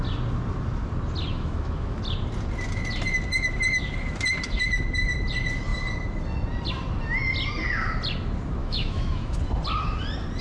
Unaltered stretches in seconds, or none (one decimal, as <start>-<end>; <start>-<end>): 0.0-1.3; 2.0-8.6; 9.4-10.4